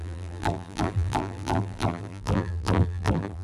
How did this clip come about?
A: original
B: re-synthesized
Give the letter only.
B